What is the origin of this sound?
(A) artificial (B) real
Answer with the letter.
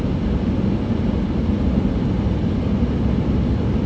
B